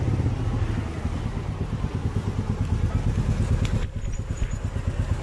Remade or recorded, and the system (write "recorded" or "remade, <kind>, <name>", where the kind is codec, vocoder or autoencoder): recorded